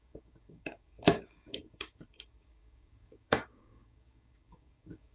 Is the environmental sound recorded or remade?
remade